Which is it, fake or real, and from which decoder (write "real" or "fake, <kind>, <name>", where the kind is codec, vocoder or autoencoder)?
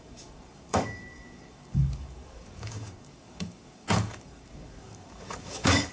fake, codec, DAC